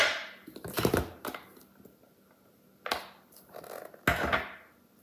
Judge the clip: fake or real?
real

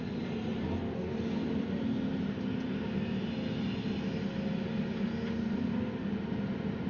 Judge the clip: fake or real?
real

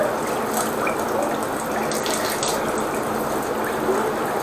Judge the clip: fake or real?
real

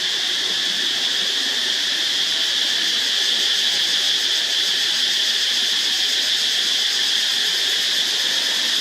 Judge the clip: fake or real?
fake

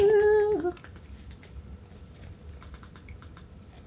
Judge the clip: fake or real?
real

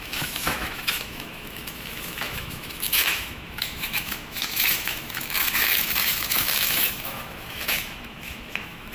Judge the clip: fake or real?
fake